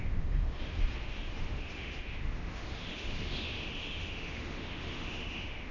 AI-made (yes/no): yes